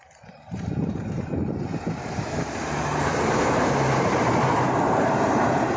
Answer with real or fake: fake